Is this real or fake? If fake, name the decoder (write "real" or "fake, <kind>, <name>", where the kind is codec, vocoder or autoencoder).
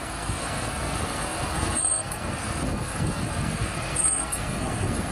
fake, codec, SNAC